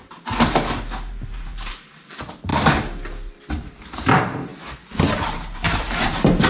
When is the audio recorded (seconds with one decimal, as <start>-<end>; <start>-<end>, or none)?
4.5-5.2